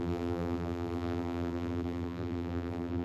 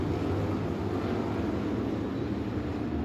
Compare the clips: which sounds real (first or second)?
second